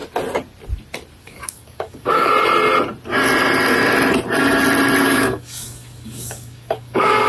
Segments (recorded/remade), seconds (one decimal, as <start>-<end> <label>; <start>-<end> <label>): 0.0-1.2 recorded; 1.2-2.3 remade; 2.3-5.0 recorded; 5.0-7.3 remade